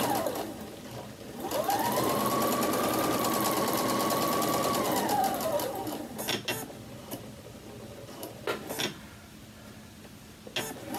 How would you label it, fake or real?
real